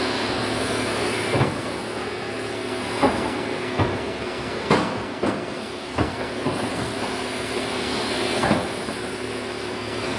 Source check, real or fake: fake